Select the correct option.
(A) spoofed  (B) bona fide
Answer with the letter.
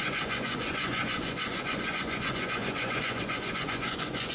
A